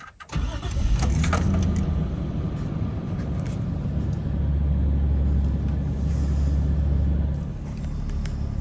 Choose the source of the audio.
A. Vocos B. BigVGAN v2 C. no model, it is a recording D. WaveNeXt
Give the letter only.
C